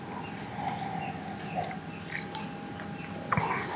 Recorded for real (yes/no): yes